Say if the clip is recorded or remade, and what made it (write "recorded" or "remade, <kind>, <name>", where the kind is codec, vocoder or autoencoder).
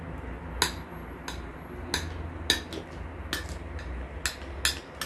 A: recorded